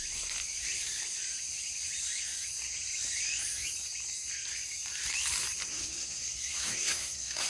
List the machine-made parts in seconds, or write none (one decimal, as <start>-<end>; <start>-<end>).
5.7-7.5